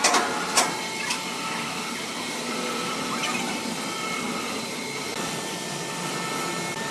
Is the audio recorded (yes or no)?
yes